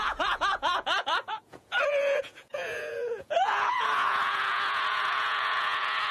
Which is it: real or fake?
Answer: fake